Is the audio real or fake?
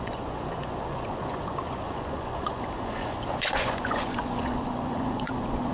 fake